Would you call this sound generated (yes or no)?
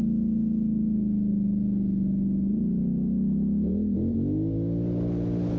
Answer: no